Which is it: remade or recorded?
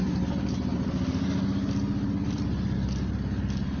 recorded